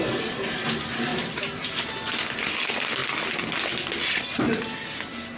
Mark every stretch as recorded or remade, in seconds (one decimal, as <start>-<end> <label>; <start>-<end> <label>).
0.0-5.4 recorded